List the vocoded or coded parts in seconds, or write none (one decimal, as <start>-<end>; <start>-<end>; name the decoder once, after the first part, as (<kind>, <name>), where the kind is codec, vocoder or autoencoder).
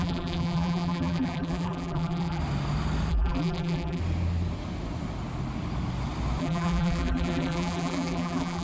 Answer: 0.0-2.4 (vocoder, BigVGAN v2); 3.1-4.0; 6.4-8.6